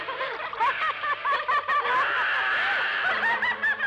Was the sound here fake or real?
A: real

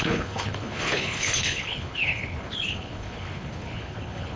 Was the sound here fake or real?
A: fake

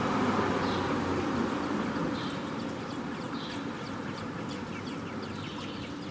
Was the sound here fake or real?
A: real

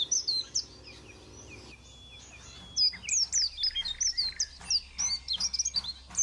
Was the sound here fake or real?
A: real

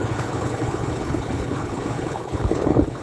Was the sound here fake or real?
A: fake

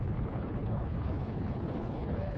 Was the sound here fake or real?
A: fake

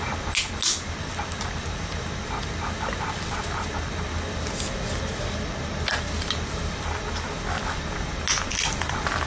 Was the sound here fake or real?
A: real